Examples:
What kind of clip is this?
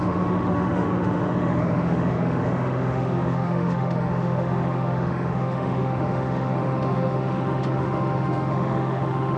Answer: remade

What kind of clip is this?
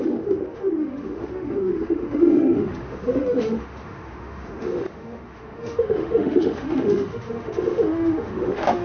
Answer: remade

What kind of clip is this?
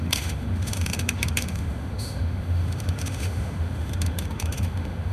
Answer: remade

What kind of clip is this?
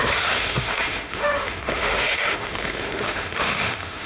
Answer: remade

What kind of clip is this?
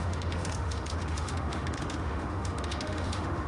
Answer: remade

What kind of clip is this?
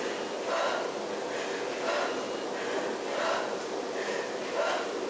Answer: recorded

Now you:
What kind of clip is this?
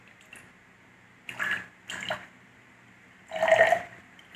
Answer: recorded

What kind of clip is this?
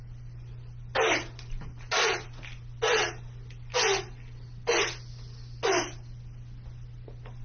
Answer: recorded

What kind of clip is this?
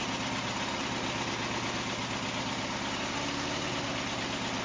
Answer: recorded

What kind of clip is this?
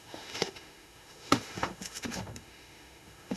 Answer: remade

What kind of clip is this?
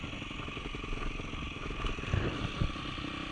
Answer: recorded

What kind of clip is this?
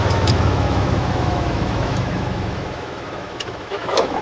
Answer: remade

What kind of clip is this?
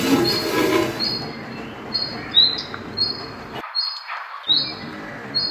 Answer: recorded